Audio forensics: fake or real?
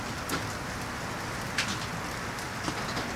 real